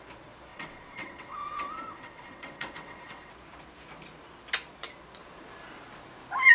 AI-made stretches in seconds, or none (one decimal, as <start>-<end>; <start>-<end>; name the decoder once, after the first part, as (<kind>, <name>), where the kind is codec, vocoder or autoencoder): 0.5-3.3 (vocoder, WaveNeXt)